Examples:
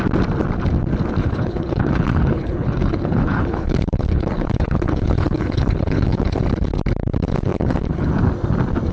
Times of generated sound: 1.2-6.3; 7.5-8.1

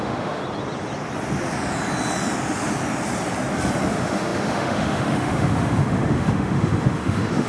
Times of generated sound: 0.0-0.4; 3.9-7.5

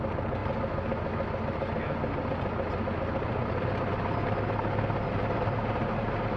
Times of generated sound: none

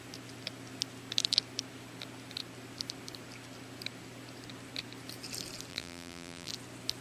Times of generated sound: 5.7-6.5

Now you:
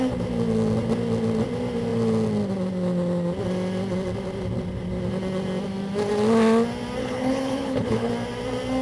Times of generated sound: 7.0-8.1

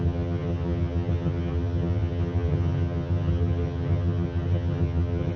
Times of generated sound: 0.0-5.4

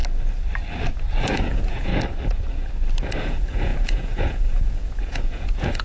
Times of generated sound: 1.2-1.9; 3.2-5.8